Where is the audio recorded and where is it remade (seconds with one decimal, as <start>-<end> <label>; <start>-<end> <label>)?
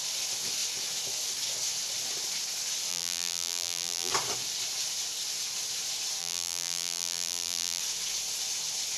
0.0-2.9 recorded; 2.9-4.1 remade; 4.1-6.2 recorded; 6.2-7.8 remade; 7.8-9.0 recorded